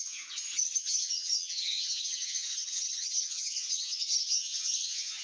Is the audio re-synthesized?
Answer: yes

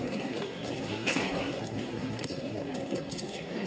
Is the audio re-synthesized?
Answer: yes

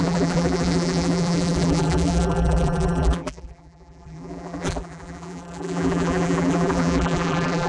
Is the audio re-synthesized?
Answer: yes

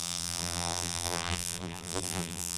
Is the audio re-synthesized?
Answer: yes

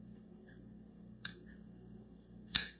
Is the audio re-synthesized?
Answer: yes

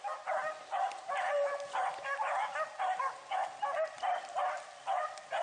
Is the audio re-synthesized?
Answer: no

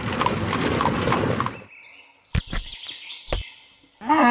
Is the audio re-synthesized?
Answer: no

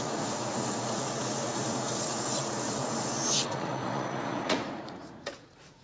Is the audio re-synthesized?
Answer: yes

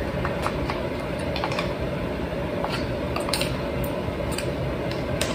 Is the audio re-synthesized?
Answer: yes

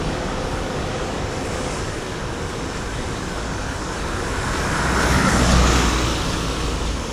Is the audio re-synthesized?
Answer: yes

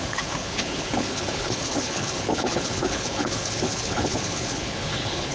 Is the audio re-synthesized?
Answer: yes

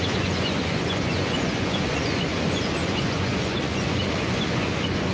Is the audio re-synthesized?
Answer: yes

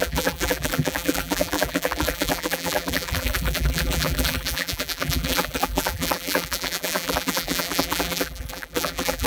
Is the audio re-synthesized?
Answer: yes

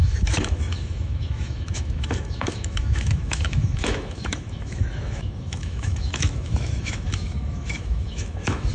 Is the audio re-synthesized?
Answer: yes